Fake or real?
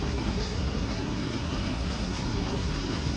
fake